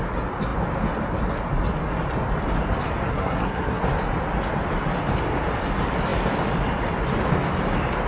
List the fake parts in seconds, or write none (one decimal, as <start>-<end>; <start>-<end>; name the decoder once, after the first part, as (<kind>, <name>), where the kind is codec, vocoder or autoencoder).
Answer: 3.1-3.8 (codec, SNAC)